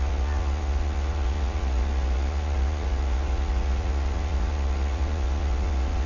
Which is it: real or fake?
fake